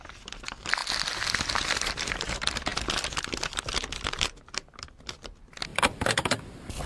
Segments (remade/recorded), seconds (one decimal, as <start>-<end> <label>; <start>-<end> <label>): 0.0-6.9 recorded